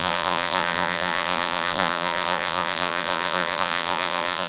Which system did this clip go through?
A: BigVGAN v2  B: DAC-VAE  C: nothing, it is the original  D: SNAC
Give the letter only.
A